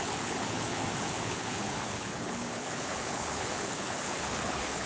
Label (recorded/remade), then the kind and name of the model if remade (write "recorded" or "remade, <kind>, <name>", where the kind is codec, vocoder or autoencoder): remade, codec, HILCodec